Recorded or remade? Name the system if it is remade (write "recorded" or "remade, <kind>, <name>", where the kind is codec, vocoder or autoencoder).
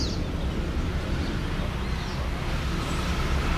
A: recorded